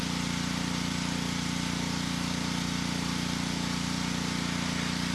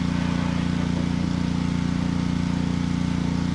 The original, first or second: second